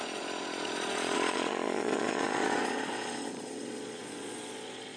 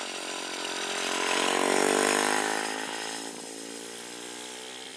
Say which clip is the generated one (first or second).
first